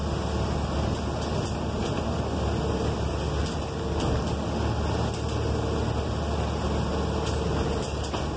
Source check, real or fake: real